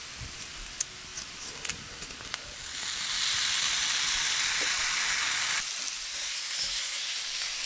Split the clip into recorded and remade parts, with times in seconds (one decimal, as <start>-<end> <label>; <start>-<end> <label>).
0.0-6.1 recorded; 6.1-7.0 remade; 7.0-7.7 recorded